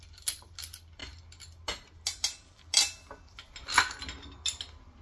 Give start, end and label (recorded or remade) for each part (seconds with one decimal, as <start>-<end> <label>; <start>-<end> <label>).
0.0-5.0 recorded